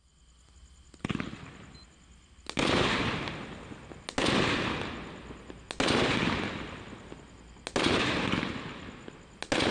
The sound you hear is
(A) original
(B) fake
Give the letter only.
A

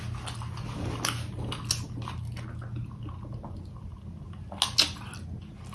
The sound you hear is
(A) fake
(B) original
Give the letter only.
B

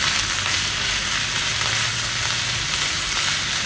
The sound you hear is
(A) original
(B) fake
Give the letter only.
A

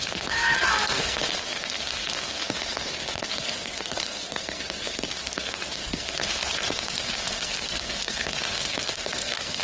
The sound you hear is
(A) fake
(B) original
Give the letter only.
A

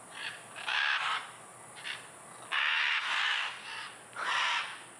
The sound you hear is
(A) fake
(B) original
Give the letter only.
B